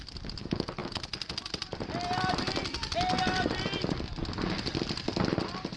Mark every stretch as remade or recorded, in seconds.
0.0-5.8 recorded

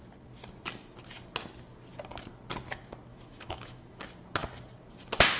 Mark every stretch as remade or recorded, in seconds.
0.0-3.1 recorded; 3.1-4.0 remade; 4.0-5.4 recorded

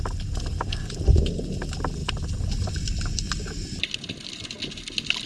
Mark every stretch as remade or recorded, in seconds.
0.0-5.3 recorded

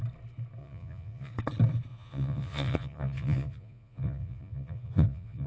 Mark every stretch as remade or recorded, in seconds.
0.0-0.6 recorded; 0.6-1.3 remade; 1.3-1.9 recorded; 1.9-5.5 remade